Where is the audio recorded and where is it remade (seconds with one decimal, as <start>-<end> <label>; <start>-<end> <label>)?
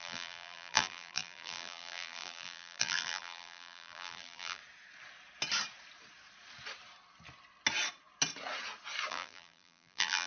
0.0-4.6 remade; 4.6-9.1 recorded; 9.1-10.3 remade